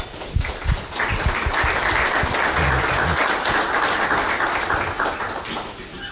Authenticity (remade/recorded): recorded